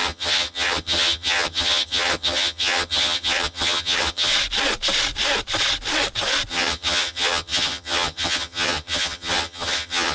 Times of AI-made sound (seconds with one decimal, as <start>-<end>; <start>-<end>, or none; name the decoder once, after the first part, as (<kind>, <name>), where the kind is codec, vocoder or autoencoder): 0.0-4.3 (vocoder, HiFi-GAN); 6.5-10.1